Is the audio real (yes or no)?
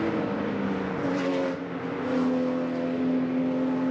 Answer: yes